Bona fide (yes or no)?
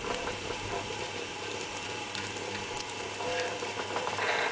no